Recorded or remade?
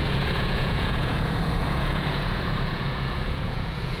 remade